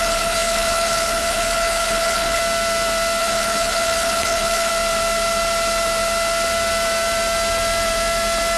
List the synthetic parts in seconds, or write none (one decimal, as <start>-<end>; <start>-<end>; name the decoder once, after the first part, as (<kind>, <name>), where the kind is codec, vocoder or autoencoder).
0.0-2.4 (codec, HILCodec); 3.2-4.7